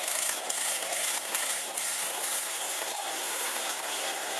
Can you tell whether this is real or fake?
fake